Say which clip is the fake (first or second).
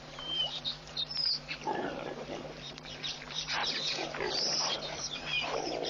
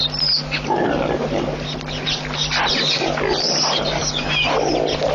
first